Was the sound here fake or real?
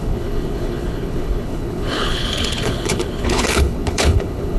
fake